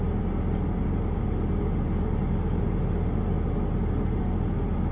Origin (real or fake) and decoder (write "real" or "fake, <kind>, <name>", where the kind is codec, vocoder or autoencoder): real